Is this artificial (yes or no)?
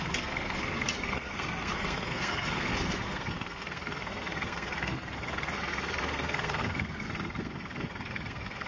yes